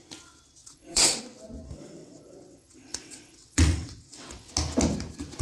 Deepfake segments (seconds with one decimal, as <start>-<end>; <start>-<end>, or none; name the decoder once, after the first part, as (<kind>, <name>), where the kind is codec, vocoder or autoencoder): 0.6-1.2 (vocoder, WaveNeXt); 2.0-4.5